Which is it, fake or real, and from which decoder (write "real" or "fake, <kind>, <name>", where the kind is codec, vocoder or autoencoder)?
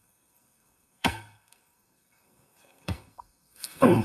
fake, codec, SNAC